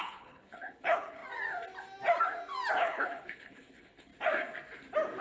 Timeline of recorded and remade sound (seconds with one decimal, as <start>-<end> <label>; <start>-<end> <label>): 0.0-1.2 remade; 1.2-2.7 recorded; 2.7-4.1 remade; 4.1-5.2 recorded